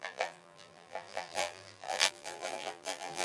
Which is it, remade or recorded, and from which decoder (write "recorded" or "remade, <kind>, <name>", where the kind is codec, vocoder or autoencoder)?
remade, vocoder, BigVGAN v2